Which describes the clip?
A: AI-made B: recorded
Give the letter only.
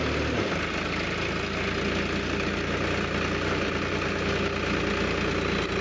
B